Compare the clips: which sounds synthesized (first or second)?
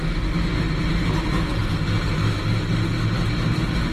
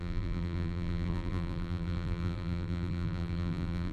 second